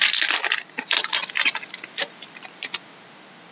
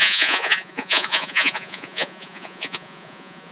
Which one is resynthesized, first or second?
second